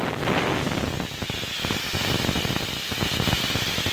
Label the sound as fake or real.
real